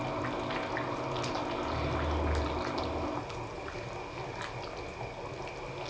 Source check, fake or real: real